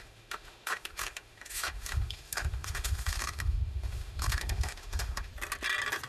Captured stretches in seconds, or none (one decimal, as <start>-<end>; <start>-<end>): 5.3-6.1